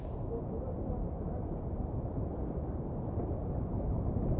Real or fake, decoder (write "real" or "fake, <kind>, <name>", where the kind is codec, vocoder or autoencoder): real